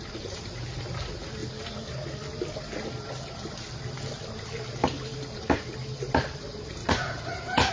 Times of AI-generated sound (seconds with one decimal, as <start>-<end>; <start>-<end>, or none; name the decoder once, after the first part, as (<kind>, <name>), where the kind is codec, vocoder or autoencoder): 6.8-7.7 (vocoder, Vocos)